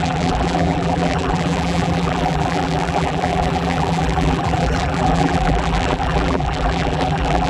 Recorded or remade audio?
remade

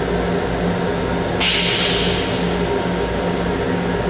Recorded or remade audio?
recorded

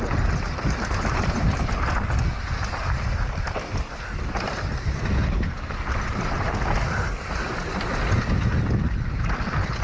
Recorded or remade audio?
recorded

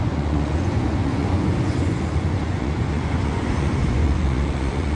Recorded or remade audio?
remade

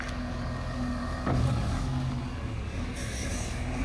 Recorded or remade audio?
remade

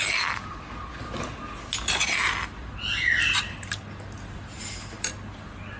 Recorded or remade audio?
recorded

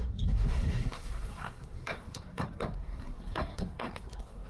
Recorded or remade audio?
remade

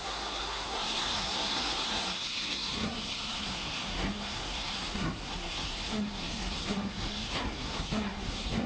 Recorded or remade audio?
remade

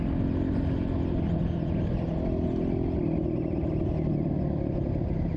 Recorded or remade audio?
recorded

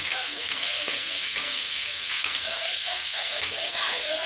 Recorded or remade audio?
remade